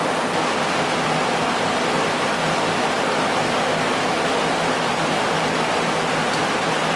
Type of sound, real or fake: real